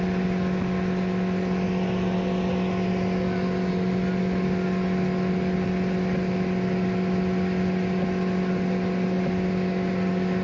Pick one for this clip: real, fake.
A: real